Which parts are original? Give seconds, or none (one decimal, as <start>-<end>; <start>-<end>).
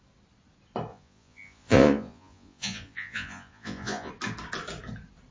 0.0-0.9; 4.1-5.3